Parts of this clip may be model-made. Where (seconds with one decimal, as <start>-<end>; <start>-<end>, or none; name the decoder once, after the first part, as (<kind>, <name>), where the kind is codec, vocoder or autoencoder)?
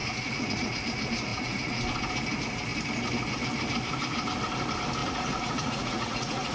0.0-0.8 (vocoder, Vocos); 1.3-1.8; 5.0-6.5